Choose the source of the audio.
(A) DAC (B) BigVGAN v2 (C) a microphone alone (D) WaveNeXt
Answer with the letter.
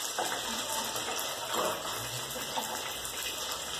C